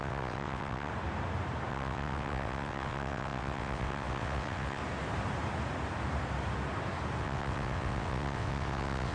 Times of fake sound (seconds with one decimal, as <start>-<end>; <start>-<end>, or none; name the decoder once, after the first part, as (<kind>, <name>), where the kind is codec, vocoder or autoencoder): 0.0-0.9 (vocoder, WaveNeXt); 1.7-4.8; 7.2-9.1